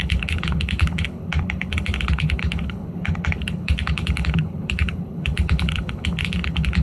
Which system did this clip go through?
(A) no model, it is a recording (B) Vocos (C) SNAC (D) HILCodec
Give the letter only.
D